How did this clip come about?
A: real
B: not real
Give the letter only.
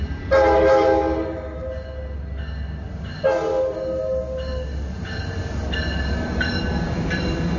A